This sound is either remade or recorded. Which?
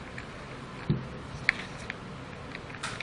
recorded